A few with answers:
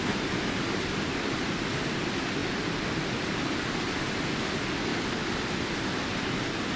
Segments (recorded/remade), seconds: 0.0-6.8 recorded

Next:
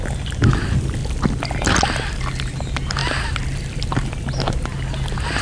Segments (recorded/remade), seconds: 0.0-5.4 recorded